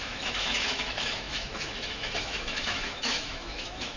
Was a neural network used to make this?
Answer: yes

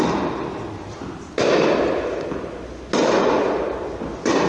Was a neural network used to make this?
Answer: no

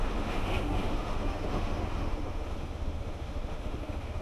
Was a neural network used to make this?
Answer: yes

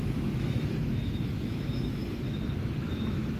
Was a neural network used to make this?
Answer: yes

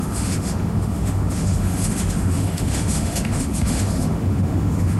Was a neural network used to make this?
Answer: yes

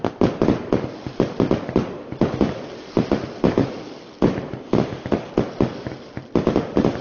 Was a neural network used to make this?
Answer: no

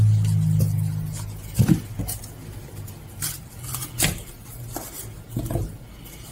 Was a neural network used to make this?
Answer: no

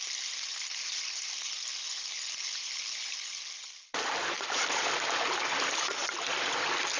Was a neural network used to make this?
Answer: no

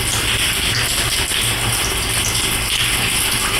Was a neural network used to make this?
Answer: no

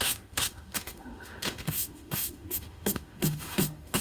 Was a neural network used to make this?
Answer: yes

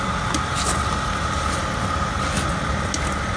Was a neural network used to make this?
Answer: no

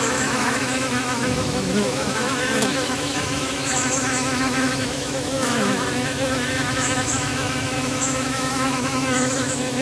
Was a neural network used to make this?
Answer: yes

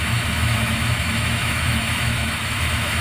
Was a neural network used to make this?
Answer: yes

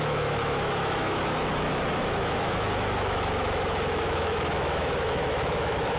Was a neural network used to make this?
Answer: yes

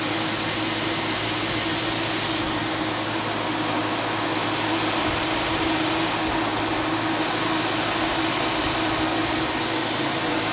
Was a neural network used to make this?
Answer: no